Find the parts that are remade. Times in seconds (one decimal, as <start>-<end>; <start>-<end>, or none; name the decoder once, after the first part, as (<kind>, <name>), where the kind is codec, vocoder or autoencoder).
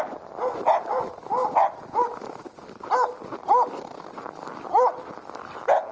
none